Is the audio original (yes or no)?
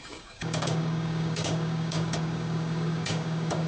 no